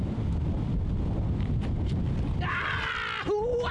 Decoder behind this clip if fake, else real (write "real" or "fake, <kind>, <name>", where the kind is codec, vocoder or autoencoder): real